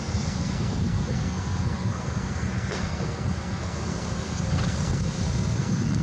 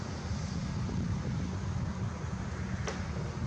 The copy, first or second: first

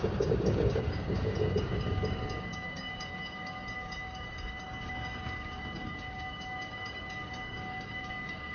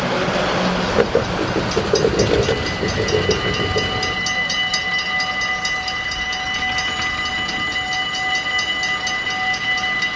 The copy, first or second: first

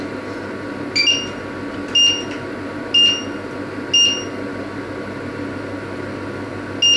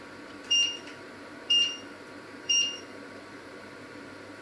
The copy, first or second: second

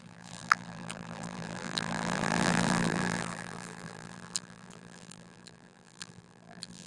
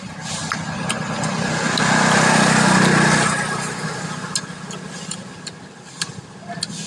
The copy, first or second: first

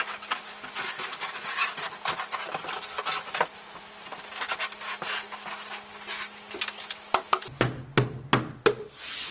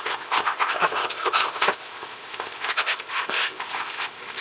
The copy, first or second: second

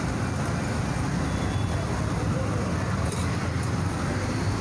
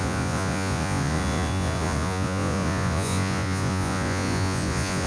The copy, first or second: second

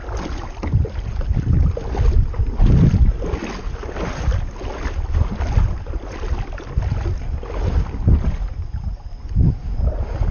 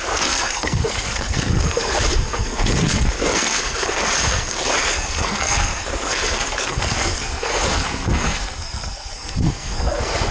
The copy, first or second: second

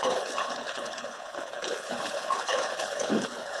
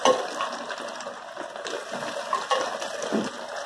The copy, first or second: first